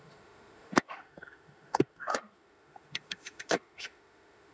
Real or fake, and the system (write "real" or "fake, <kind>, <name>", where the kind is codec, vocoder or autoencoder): fake, autoencoder, DAC-VAE